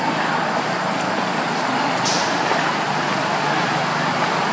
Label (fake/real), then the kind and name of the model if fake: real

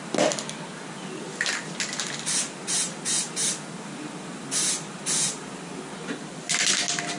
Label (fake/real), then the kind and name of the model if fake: real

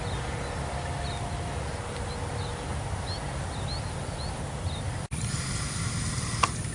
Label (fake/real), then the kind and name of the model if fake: real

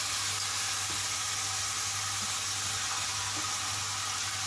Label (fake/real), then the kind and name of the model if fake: real